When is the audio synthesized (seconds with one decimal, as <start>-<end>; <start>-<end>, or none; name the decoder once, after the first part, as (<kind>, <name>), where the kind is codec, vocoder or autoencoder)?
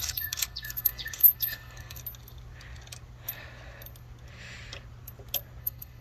0.0-2.0 (codec, SNAC); 5.6-6.0